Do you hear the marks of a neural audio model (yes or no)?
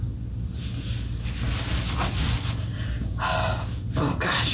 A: no